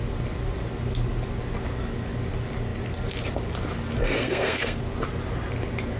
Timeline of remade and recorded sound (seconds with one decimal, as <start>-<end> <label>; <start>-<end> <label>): 0.0-4.0 recorded; 4.0-4.8 remade; 4.8-6.0 recorded